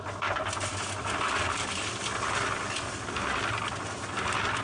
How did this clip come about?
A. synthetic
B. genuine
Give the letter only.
B